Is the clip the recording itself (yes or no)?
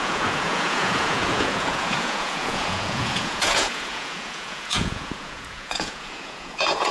no